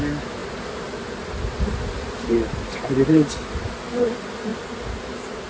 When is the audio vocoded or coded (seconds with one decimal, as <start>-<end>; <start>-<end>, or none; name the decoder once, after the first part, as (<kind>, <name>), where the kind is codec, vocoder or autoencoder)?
none